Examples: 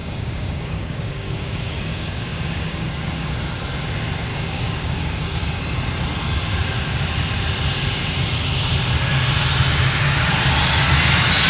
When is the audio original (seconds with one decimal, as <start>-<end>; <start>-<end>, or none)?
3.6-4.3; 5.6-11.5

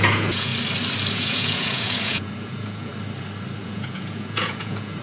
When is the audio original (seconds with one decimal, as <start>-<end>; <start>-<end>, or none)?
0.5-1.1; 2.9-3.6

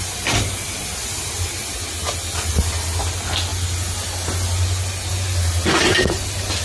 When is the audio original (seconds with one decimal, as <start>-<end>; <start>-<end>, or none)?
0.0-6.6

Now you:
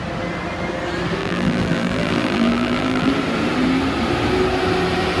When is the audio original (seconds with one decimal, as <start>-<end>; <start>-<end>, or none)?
0.0-1.2; 3.1-5.2

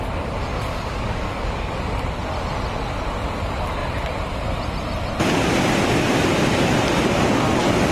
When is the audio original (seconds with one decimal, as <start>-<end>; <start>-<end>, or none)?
0.0-0.7; 1.7-7.9

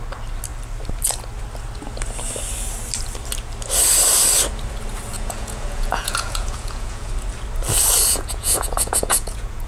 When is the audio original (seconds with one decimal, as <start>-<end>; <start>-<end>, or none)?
0.0-5.1; 7.1-8.1